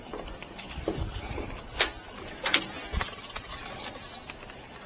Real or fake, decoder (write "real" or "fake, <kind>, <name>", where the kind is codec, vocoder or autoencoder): fake, vocoder, BigVGAN v2